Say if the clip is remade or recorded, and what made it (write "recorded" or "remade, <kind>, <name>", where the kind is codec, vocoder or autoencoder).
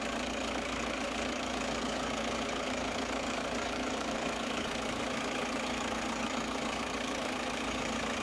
remade, codec, DAC